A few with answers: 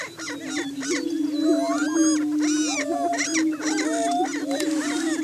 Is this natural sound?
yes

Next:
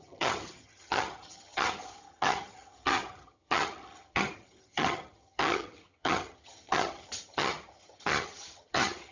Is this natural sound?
no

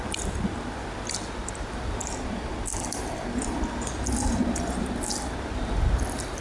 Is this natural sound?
yes